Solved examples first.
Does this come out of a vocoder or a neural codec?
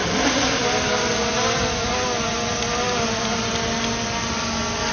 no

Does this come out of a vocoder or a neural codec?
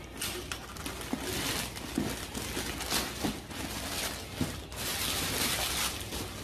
no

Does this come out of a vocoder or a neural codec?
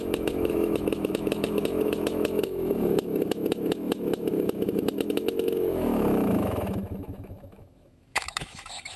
yes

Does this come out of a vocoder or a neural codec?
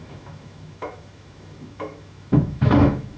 yes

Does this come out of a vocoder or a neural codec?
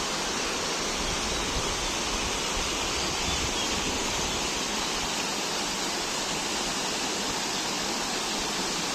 no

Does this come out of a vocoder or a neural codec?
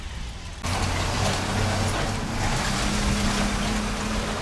no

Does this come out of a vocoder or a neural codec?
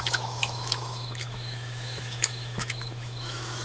yes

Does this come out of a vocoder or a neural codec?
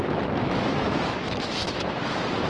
yes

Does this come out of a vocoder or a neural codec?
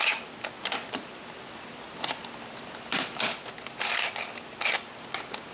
no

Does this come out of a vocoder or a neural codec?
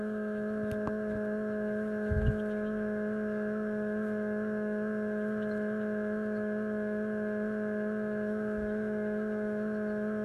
yes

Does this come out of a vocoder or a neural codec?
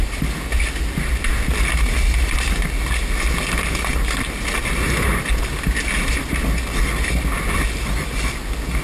no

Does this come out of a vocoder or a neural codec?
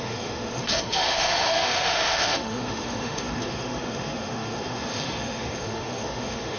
yes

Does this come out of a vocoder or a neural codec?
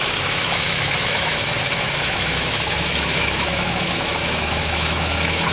yes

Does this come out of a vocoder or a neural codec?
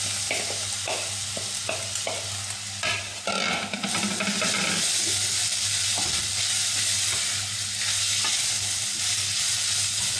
no